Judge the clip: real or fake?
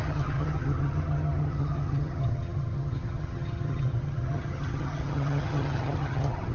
fake